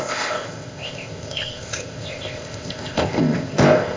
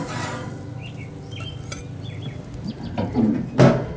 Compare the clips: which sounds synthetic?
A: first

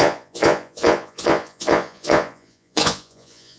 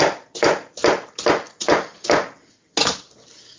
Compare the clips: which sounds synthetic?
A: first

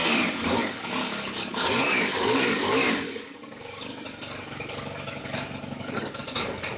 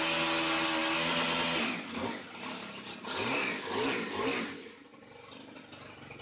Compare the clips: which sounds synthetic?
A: first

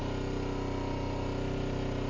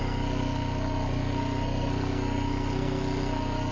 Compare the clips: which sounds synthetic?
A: second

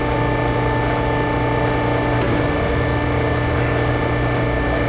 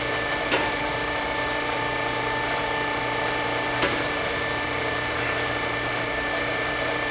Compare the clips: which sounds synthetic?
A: second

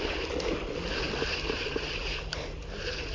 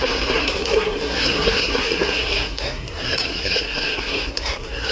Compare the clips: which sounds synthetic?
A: second